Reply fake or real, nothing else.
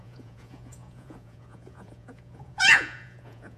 fake